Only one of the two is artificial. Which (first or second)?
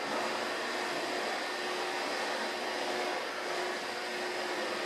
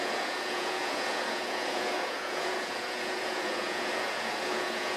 second